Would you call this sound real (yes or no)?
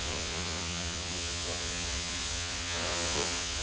no